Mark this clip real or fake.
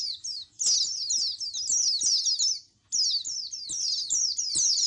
real